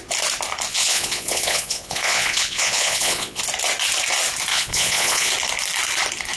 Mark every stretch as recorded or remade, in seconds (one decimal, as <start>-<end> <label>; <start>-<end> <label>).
0.0-0.7 recorded; 0.7-3.4 remade; 3.4-4.5 recorded; 4.5-5.3 remade; 5.3-6.4 recorded